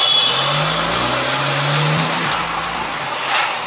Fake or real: real